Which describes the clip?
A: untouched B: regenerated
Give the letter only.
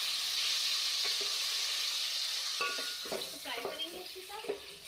A